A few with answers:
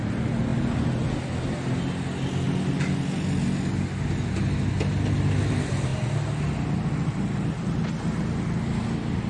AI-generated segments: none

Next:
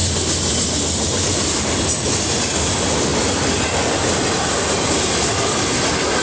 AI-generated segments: none

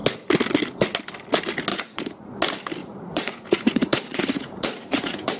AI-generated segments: 1.7-2.3 (vocoder, Vocos); 2.8-5.4